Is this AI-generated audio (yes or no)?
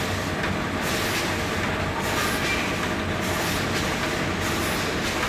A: no